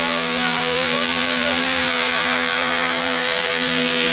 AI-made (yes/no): yes